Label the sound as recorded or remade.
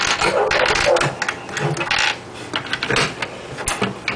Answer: recorded